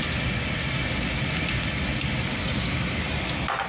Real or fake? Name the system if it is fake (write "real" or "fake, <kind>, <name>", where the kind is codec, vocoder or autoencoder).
real